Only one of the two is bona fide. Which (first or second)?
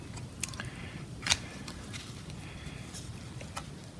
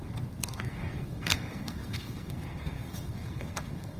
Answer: first